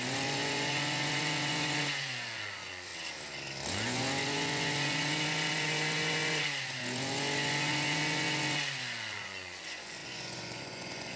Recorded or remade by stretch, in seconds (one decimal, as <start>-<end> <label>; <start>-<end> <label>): 0.0-2.9 remade; 2.9-3.7 recorded; 3.7-11.2 remade

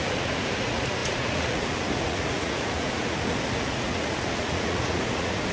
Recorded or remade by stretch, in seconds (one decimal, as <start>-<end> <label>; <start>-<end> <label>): 0.0-5.5 remade

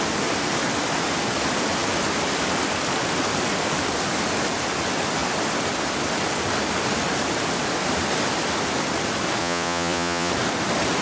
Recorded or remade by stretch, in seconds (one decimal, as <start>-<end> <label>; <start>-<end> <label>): 0.0-9.4 recorded; 9.4-10.3 remade; 10.3-11.0 recorded

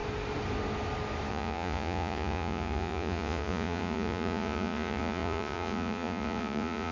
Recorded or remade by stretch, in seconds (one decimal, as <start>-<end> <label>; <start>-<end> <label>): 0.0-1.3 recorded; 1.3-6.9 remade

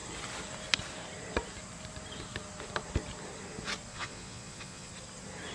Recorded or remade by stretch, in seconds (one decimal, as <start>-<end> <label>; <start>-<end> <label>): 0.0-3.9 recorded; 3.9-4.9 remade; 4.9-5.5 recorded

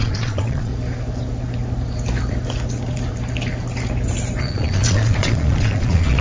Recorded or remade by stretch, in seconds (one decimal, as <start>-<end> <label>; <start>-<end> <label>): 0.0-0.7 remade; 0.7-4.4 recorded; 4.4-6.2 remade